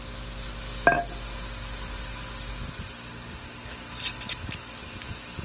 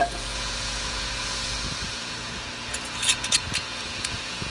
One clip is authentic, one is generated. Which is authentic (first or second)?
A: first